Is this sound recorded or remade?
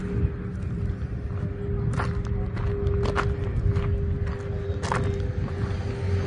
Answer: recorded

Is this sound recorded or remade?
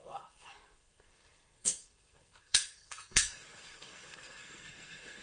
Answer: remade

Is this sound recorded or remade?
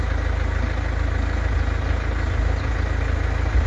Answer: recorded